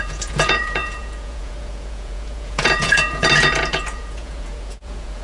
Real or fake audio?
fake